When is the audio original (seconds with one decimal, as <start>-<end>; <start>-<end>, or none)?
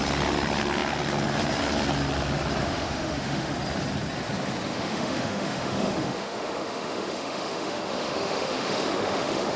0.0-2.6; 3.5-4.7